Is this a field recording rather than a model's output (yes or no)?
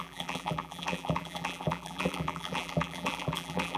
no